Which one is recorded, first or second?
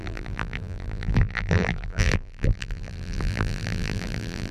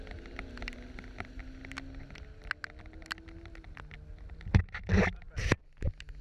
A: second